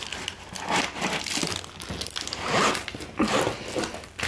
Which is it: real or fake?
real